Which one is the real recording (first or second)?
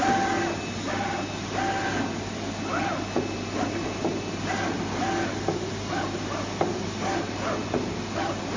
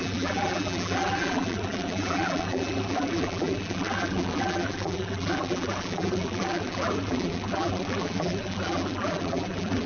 first